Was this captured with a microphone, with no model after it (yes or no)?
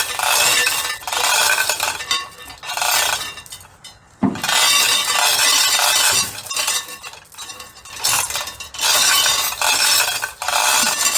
yes